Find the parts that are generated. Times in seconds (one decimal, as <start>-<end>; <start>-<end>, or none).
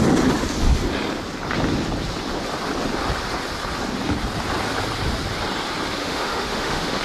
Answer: 6.0-7.0